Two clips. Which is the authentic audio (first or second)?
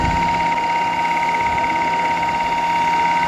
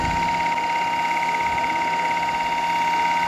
second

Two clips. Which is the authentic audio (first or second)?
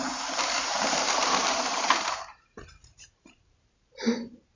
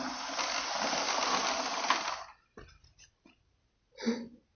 second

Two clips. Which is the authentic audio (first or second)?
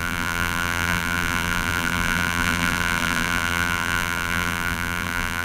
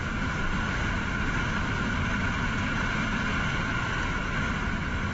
second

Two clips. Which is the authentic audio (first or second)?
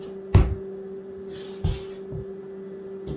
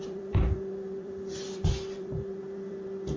first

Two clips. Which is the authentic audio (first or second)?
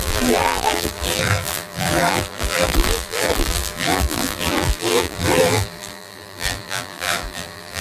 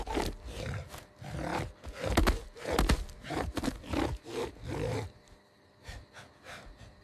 second